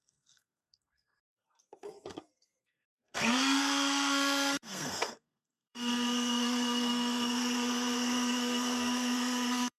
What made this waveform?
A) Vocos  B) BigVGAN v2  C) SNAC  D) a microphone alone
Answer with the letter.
C